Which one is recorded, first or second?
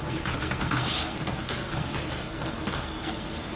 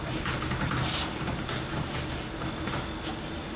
second